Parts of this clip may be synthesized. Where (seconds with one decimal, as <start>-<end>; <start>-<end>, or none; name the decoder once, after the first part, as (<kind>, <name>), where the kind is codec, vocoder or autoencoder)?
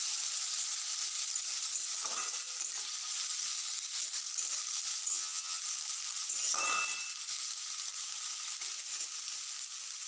5.1-5.6 (vocoder, HiFi-GAN)